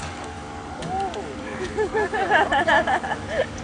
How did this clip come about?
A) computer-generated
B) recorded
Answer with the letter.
A